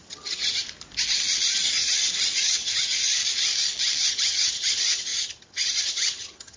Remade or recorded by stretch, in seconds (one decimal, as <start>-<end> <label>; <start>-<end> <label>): 0.0-0.6 remade; 0.6-1.5 recorded; 1.5-3.2 remade; 3.2-4.1 recorded; 4.1-6.6 remade